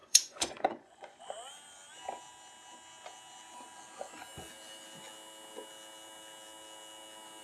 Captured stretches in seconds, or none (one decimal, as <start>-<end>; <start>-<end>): 1.2-7.4